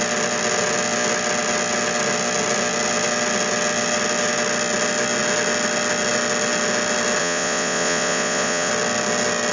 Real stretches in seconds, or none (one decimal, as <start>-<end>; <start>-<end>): 0.0-7.2; 8.7-9.5